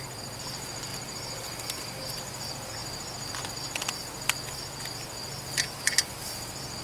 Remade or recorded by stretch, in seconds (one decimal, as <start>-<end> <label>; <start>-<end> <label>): 0.0-6.8 recorded